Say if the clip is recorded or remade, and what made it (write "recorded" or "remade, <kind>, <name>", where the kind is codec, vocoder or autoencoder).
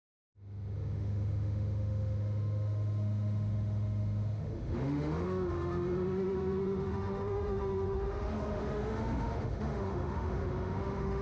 remade, autoencoder, DAC-VAE